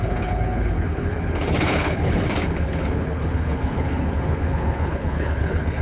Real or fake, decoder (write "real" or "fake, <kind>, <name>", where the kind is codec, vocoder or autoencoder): fake, codec, HILCodec